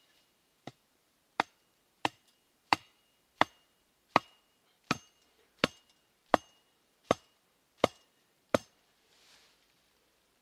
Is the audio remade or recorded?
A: remade